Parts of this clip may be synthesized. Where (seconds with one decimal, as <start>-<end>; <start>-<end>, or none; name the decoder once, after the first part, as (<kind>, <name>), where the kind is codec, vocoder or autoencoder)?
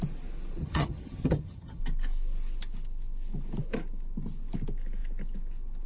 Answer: 0.6-1.8 (vocoder, HiFi-GAN)